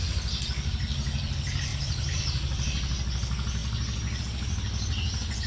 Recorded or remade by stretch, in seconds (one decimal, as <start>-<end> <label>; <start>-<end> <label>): 0.0-5.5 recorded